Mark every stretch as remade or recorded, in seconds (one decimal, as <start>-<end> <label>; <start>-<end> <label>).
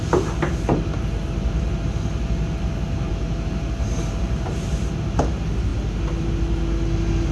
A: 0.0-3.1 recorded; 3.1-5.2 remade; 5.2-7.3 recorded